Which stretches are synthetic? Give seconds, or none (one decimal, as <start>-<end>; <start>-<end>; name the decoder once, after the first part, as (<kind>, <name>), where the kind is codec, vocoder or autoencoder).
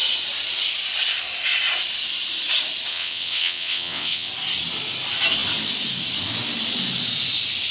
2.9-4.3 (vocoder, WaveNeXt)